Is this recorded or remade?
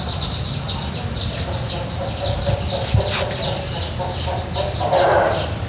recorded